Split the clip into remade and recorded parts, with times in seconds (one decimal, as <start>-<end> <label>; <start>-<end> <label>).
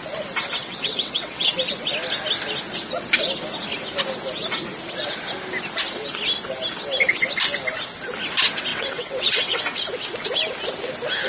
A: 0.0-0.6 recorded; 0.6-1.5 remade; 1.5-8.7 recorded; 8.7-9.6 remade; 9.6-11.3 recorded